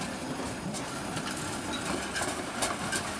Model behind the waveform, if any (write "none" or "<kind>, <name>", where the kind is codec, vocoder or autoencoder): none